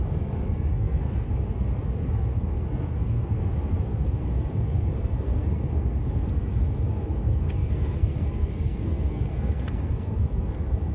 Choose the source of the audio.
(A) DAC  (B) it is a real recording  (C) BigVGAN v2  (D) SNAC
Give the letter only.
D